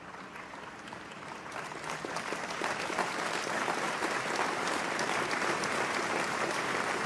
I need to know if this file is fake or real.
fake